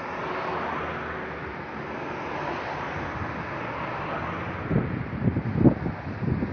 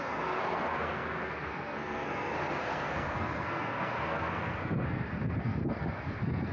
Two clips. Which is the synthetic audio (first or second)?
second